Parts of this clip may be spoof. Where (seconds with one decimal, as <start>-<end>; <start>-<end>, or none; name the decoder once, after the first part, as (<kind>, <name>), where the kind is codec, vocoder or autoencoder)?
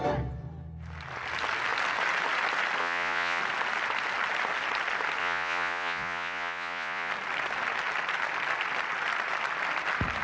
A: 2.8-3.4 (vocoder, Vocos); 5.2-7.1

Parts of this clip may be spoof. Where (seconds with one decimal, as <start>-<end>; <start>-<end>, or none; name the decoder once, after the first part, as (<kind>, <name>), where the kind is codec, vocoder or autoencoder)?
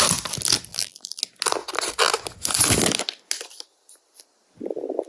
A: 0.7-1.2 (vocoder, BigVGAN v2)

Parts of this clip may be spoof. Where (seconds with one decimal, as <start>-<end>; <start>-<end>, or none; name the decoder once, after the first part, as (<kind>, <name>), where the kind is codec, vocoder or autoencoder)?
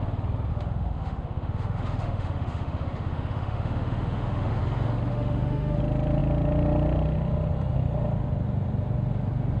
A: 0.5-4.6 (autoencoder, DAC-VAE); 5.1-5.8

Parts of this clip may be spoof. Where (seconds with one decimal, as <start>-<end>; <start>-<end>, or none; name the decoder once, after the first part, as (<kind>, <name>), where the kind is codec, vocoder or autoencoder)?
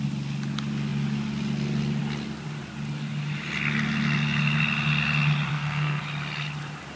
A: 5.5-6.0 (codec, SNAC)